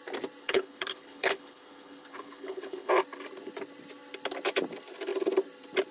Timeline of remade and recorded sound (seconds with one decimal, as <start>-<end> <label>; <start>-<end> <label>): 0.0-0.4 recorded; 0.4-2.9 remade; 2.9-5.9 recorded